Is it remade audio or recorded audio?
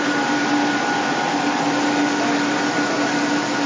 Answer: recorded